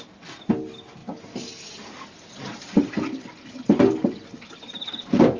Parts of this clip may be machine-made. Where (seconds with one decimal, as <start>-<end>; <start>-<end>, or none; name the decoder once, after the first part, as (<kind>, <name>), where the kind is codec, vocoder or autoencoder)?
none